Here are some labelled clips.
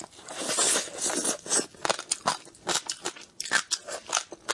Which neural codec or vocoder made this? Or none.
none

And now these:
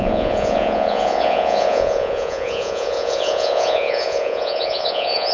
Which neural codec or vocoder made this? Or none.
vocoder, Vocos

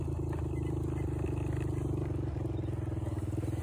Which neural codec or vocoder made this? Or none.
none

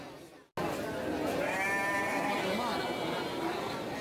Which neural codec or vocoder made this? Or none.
none